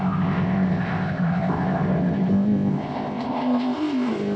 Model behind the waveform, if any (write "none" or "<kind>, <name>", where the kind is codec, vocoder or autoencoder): codec, ZipCodec